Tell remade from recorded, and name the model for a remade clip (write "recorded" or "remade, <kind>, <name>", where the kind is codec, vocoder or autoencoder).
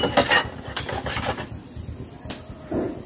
recorded